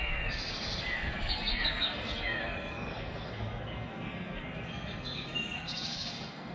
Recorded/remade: remade